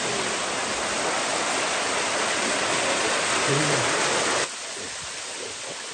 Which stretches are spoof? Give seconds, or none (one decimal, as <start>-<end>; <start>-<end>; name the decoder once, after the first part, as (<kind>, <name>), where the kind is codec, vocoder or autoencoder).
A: none